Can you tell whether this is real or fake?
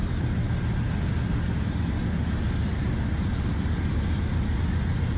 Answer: real